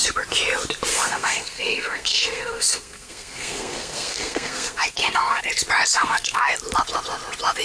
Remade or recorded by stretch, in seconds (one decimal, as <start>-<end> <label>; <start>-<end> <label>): 0.0-0.9 recorded; 0.9-5.4 remade; 5.4-5.9 recorded; 5.9-6.5 remade; 6.5-7.6 recorded